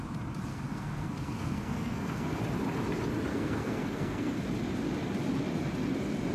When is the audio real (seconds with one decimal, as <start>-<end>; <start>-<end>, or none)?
0.0-0.5; 2.4-3.3; 4.4-6.3